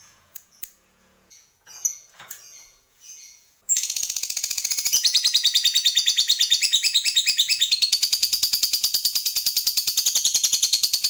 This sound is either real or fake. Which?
fake